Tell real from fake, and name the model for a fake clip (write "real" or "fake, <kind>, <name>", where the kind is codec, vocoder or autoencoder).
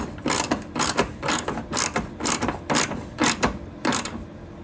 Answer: real